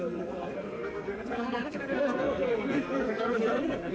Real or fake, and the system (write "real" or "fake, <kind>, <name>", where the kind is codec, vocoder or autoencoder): fake, codec, SNAC